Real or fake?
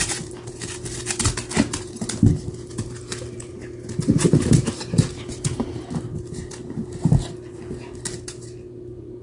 real